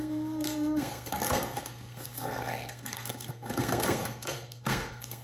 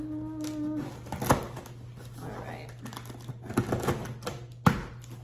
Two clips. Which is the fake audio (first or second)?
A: first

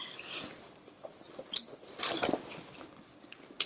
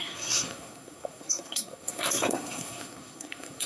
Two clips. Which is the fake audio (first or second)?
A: second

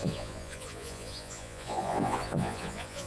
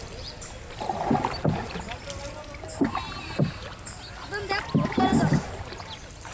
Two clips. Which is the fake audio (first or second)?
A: first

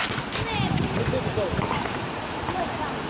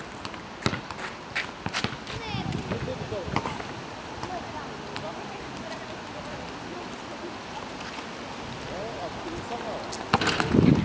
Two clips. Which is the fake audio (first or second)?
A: first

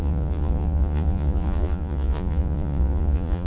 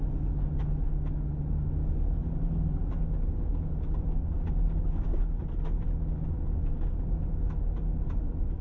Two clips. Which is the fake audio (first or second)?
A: first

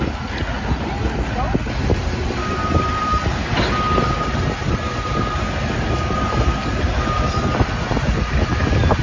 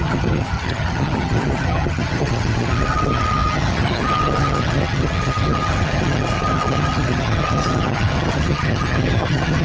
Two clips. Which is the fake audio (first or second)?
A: second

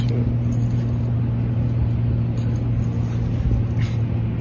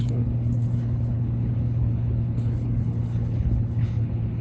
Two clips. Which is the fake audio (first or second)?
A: second